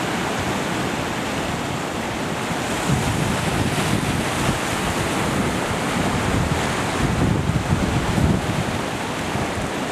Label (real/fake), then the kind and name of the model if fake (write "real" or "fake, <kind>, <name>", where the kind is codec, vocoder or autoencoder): real